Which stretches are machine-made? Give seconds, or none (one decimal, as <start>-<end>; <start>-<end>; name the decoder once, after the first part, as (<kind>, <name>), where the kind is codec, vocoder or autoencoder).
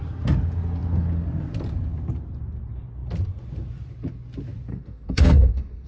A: 4.7-5.9 (codec, SNAC)